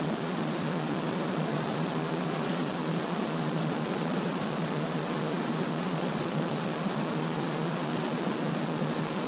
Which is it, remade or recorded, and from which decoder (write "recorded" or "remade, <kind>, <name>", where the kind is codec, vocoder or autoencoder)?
remade, vocoder, Vocos